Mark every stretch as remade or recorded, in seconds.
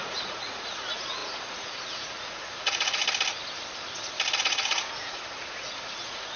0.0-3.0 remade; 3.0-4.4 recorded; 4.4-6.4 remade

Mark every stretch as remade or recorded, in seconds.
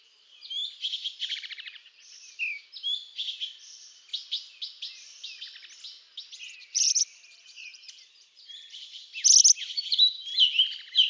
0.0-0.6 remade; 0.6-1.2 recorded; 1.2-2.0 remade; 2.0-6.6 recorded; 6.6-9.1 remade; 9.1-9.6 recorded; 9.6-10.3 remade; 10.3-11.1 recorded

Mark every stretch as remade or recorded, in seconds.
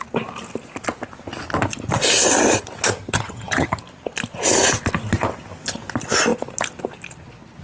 0.0-3.0 recorded; 3.0-3.8 remade; 3.8-7.6 recorded